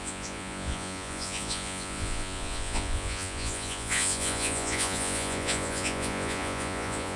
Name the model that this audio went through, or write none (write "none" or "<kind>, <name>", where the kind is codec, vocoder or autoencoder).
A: vocoder, Vocos